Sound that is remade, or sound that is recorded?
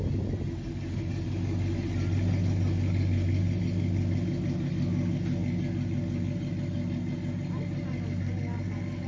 recorded